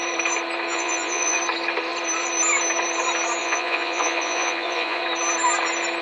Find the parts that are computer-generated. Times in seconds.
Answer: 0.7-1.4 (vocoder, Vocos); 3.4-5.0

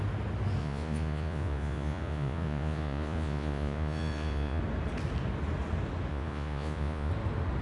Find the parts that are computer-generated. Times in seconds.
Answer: 0.6-4.6 (vocoder, Vocos); 6.1-7.1

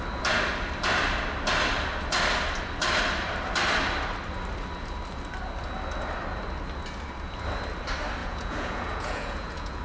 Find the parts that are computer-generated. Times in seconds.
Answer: 8.2-9.8 (vocoder, Vocos)